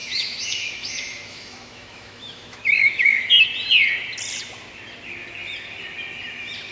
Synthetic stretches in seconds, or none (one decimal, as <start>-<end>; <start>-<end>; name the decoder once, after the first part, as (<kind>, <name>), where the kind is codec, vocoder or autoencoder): 0.0-3.3 (autoencoder, DAC-VAE)